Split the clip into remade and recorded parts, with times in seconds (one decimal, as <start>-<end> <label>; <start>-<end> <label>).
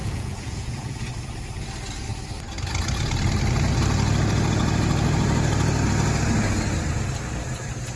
0.0-1.1 remade; 1.1-8.0 recorded